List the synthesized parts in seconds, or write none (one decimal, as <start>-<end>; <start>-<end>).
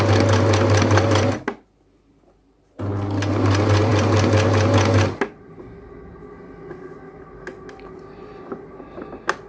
none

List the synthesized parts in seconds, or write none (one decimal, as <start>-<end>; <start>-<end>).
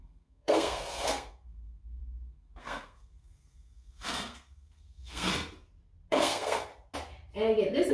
0.0-5.3; 6.1-6.7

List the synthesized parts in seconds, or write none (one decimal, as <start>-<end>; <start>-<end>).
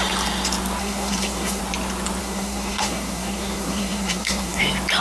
0.8-1.6; 2.2-4.6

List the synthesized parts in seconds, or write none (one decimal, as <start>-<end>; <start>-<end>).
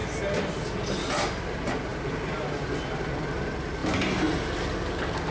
none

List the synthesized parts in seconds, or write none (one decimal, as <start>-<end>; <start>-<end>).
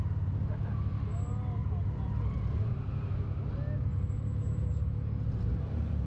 none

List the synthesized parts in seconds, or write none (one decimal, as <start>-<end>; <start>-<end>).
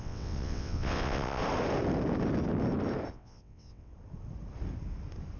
0.0-1.4; 3.1-3.9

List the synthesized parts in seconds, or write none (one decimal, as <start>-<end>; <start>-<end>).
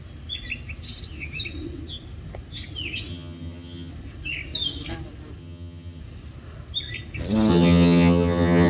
3.1-3.9; 5.4-6.0; 7.5-8.7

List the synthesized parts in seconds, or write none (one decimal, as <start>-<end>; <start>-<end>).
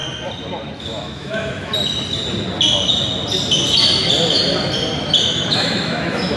0.8-1.7; 5.2-6.4